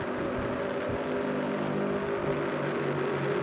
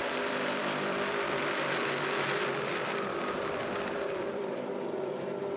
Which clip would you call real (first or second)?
first